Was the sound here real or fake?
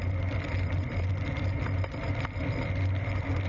real